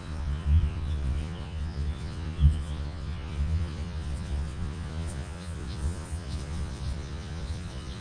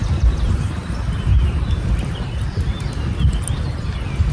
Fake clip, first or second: first